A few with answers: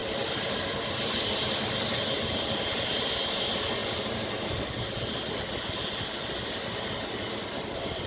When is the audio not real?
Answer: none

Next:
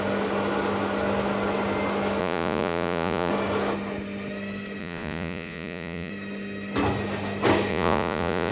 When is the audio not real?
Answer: 2.2-3.3 (vocoder, Vocos); 4.8-6.1; 7.7-8.5

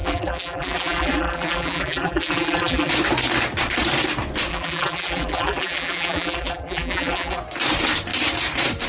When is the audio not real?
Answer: 0.0-2.9 (vocoder, BigVGAN v2); 4.5-7.4

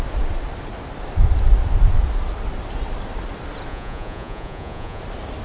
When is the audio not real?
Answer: 3.7-5.0 (vocoder, Vocos)

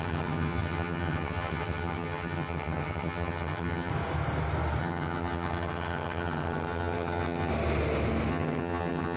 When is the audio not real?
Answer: 0.0-3.9 (vocoder, HiFi-GAN); 4.8-7.5; 8.3-9.2